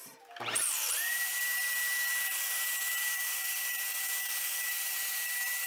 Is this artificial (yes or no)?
yes